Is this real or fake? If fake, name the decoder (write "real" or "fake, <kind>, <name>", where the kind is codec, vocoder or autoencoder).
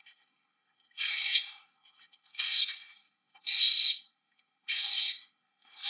fake, codec, SNAC